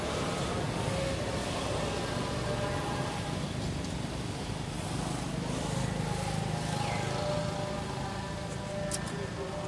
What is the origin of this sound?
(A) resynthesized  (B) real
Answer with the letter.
B